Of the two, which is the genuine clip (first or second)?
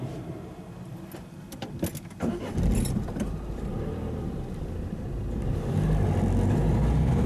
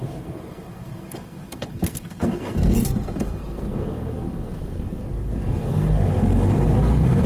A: first